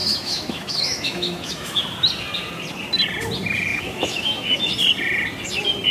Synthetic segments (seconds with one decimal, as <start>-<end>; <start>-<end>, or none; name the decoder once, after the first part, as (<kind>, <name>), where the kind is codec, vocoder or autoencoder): 0.0-1.8 (autoencoder, DAC-VAE); 3.7-4.7